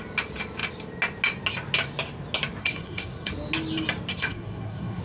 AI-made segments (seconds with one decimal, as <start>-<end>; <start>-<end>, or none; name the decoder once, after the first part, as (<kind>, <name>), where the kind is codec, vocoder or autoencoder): 2.6-3.3 (codec, SNAC); 4.1-5.0